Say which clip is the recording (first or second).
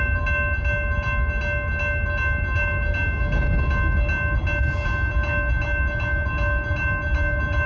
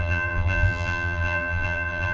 first